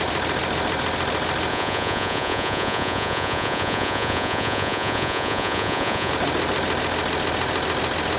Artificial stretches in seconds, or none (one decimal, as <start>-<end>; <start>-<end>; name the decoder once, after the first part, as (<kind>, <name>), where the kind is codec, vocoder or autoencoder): 1.5-6.1 (vocoder, Vocos)